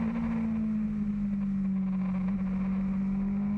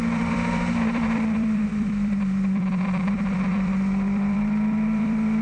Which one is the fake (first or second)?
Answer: second